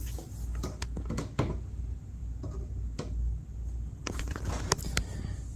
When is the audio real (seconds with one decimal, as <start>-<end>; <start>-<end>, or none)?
0.0-5.6